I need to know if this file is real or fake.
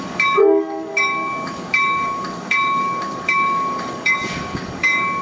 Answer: fake